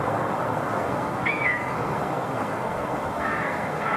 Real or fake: fake